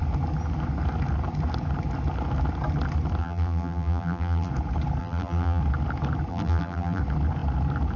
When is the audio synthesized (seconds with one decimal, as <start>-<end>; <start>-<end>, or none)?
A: 3.2-4.5; 5.0-5.6; 6.3-7.0